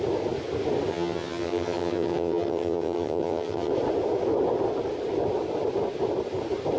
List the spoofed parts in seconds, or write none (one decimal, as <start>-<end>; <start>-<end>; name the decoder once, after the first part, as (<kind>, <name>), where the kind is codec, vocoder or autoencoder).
0.9-3.7 (vocoder, HiFi-GAN)